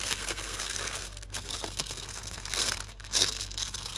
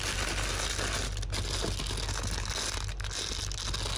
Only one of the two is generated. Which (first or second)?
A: first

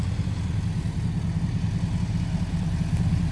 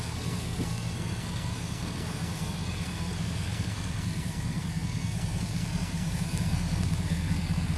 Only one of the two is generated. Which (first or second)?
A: second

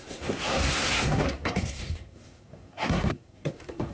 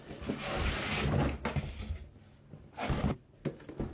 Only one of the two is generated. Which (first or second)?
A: first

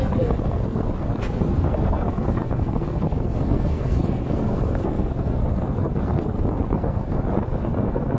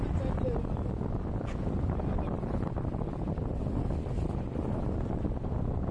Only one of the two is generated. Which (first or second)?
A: first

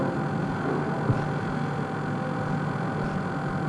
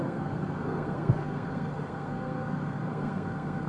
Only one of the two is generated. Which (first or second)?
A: second